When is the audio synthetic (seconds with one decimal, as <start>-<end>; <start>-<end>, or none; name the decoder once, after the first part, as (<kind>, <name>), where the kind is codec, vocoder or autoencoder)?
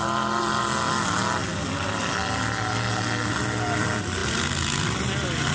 none